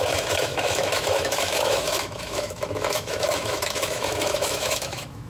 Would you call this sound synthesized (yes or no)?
yes